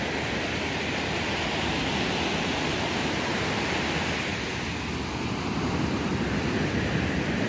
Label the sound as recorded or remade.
recorded